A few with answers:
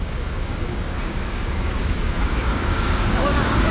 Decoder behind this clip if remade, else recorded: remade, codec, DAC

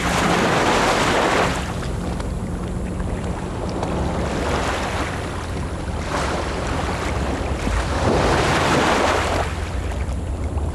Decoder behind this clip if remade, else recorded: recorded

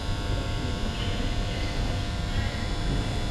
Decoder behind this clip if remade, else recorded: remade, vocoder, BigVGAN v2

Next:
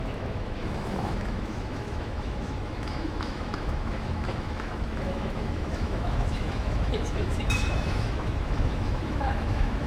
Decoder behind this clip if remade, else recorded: remade, autoencoder, DAC-VAE